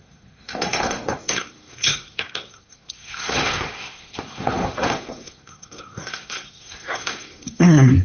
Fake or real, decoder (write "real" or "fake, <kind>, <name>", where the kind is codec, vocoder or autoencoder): fake, codec, SNAC